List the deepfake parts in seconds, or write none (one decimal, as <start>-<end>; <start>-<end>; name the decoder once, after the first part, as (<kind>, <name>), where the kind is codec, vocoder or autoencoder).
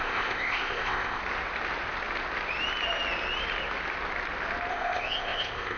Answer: 0.0-1.2 (codec, ZipCodec); 4.7-5.8